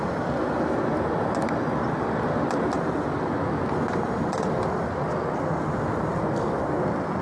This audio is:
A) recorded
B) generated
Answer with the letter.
A